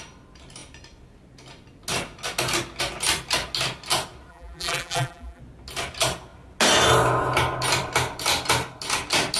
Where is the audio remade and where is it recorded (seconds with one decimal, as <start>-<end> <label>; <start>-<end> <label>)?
0.0-4.3 recorded; 4.3-5.4 remade; 5.4-9.4 recorded

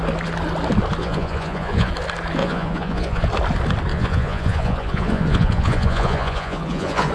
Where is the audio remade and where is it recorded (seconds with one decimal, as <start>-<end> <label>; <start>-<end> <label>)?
0.0-1.0 recorded; 1.0-1.9 remade; 1.9-2.4 recorded; 2.4-3.2 remade; 3.2-3.9 recorded; 3.9-7.1 remade